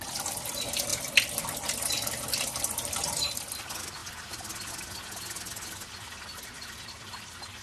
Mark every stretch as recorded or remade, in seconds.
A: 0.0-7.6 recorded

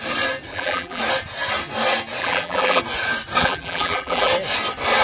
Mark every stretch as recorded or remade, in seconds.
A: 0.0-0.5 recorded; 0.5-1.0 remade; 1.0-2.2 recorded; 2.2-2.8 remade; 2.8-3.4 recorded; 3.4-4.3 remade; 4.3-5.0 recorded

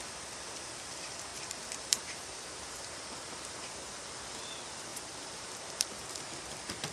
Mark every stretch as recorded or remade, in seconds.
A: 0.0-1.3 recorded; 1.3-3.1 remade; 3.1-4.9 recorded; 4.9-6.0 remade; 6.0-6.9 recorded

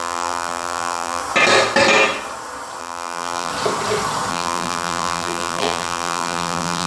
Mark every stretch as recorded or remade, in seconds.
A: 0.0-1.2 remade; 1.2-2.8 recorded; 2.8-3.5 remade; 3.5-4.3 recorded; 4.3-6.9 remade

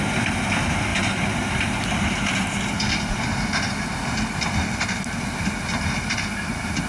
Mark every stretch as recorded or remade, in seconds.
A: 0.0-6.9 recorded

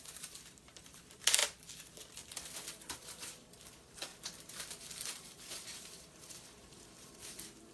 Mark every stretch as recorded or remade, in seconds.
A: 0.0-1.4 remade; 1.4-2.7 recorded; 2.7-7.7 remade

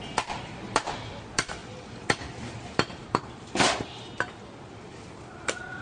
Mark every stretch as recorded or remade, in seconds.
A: 0.0-5.8 remade